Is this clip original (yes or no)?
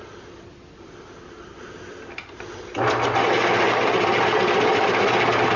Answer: yes